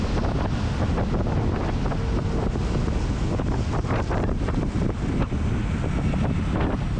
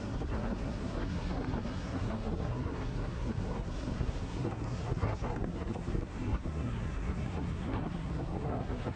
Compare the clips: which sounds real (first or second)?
first